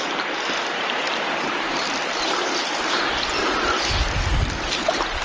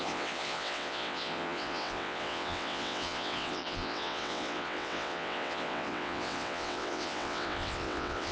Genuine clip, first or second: first